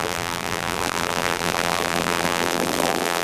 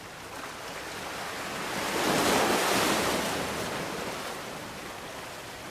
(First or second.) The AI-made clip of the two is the first